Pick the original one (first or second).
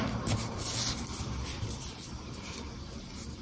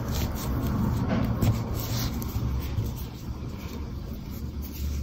second